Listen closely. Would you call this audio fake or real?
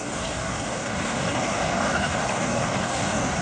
fake